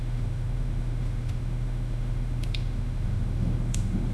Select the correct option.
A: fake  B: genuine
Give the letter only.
A